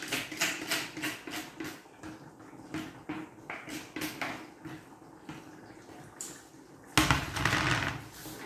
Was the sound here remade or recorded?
recorded